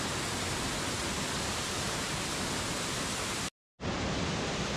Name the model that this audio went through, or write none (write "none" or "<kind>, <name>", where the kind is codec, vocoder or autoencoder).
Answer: none